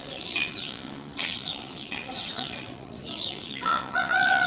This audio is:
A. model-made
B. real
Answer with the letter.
A